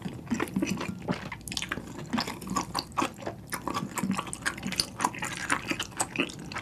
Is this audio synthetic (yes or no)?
no